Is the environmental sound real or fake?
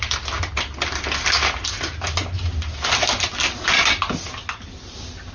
real